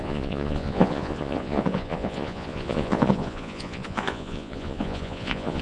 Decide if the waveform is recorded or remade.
remade